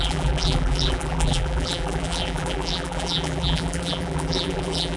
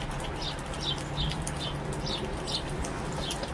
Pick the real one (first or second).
second